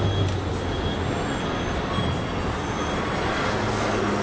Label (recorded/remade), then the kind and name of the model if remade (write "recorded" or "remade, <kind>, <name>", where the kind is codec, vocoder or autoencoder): recorded